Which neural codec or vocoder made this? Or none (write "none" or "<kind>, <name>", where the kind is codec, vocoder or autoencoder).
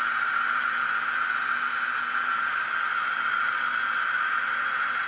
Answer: none